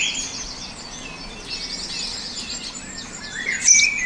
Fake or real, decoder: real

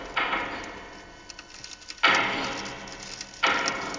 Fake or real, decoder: real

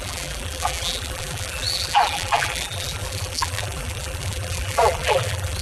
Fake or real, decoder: fake, vocoder, BigVGAN v2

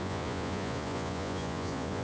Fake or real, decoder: fake, vocoder, Vocos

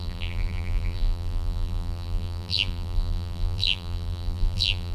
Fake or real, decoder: fake, vocoder, BigVGAN v2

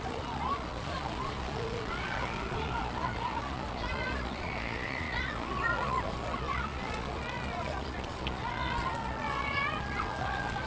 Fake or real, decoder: fake, vocoder, Vocos